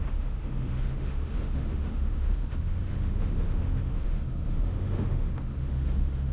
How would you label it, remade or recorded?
remade